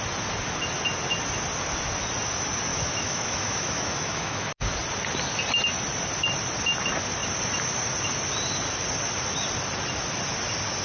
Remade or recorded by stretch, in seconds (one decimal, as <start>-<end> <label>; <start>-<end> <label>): 0.0-2.7 recorded; 2.7-4.5 remade; 4.5-10.8 recorded

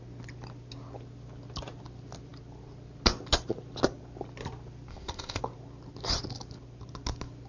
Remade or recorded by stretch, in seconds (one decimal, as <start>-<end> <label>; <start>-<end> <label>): 0.0-4.9 recorded; 4.9-5.4 remade; 5.4-7.5 recorded